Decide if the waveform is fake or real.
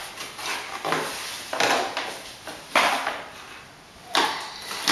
real